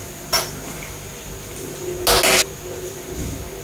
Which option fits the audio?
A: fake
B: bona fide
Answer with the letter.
B